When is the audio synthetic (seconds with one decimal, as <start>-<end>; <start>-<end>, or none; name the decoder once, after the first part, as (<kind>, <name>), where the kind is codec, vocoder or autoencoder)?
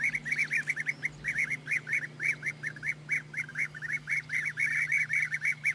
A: 3.5-4.1 (autoencoder, DAC-VAE)